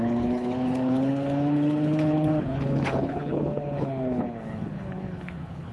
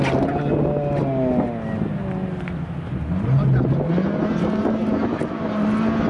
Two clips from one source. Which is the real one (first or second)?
second